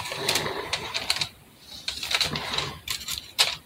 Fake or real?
fake